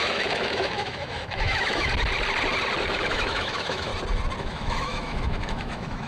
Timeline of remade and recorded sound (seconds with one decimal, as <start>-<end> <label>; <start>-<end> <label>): 0.0-1.9 remade; 1.9-2.9 recorded; 2.9-3.9 remade; 3.9-4.4 recorded; 4.4-6.1 remade